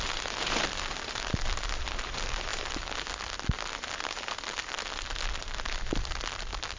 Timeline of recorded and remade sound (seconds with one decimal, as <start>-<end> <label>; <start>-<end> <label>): 0.0-6.8 recorded